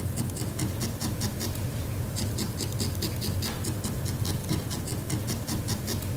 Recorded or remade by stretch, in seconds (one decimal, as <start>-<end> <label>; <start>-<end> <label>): 0.0-1.6 recorded; 1.6-2.4 remade; 2.4-6.2 recorded